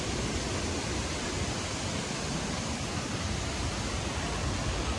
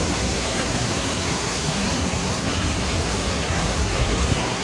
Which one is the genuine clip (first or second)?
first